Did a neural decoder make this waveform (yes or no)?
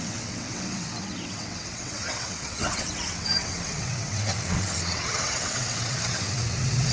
yes